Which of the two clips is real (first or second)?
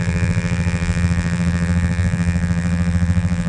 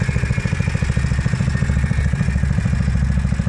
second